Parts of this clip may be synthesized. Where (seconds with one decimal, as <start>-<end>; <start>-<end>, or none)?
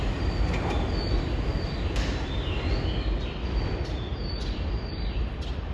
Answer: 4.1-5.2